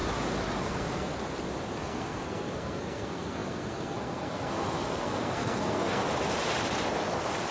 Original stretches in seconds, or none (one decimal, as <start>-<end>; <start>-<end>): 0.0-0.6; 1.1-1.8; 6.0-7.5